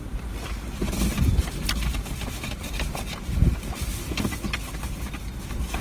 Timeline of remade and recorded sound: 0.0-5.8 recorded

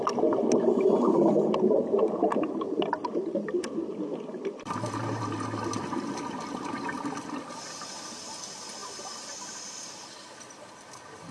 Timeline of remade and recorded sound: 0.0-11.3 recorded

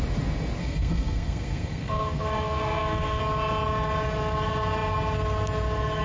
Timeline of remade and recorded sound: 0.0-0.6 recorded; 0.6-3.2 remade; 3.2-6.0 recorded

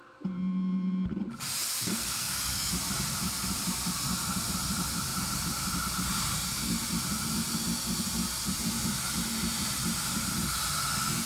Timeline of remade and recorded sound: 0.0-1.8 recorded; 1.8-2.7 remade; 2.7-11.3 recorded

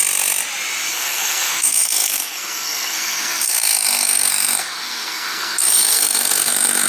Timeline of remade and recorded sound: 0.0-0.9 recorded; 0.9-6.9 remade

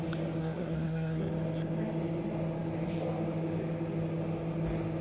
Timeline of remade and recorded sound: 0.0-0.4 recorded; 0.4-1.2 remade; 1.2-5.0 recorded